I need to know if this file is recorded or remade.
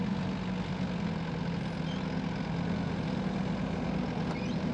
recorded